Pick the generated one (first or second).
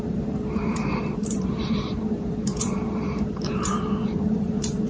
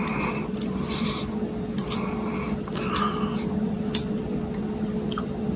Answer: first